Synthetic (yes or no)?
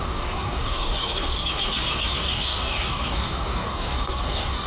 yes